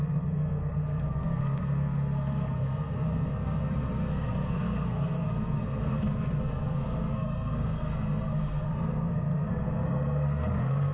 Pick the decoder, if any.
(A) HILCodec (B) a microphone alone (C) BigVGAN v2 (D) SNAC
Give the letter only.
D